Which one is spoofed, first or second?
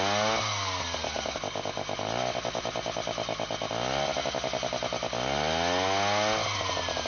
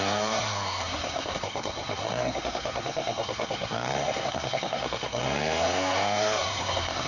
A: second